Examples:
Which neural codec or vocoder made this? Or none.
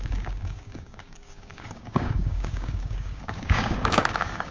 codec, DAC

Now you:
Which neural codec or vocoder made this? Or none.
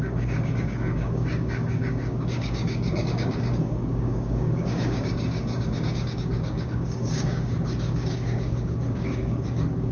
codec, DAC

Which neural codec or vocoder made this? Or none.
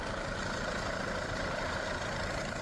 none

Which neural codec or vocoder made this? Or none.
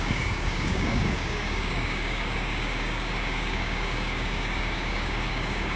codec, DAC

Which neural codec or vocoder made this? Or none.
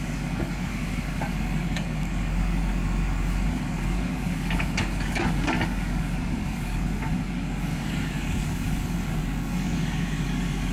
codec, DAC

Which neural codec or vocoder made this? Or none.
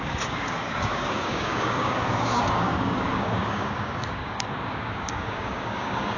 codec, DAC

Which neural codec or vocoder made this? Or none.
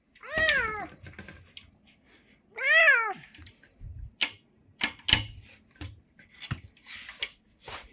none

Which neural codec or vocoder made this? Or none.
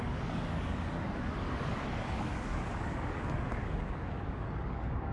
codec, DAC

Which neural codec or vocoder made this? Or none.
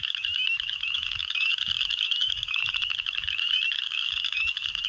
codec, DAC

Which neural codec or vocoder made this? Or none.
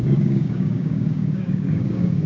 codec, DAC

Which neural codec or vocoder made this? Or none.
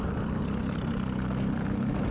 none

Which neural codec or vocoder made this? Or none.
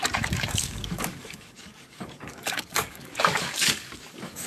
codec, DAC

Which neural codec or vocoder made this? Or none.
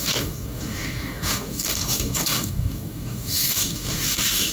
codec, DAC